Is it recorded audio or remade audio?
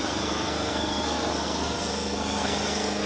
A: remade